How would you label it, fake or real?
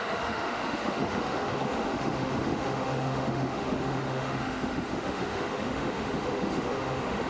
fake